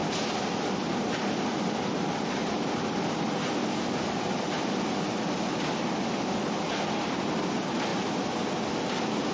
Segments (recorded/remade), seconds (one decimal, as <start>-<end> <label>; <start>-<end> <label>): 0.0-9.3 recorded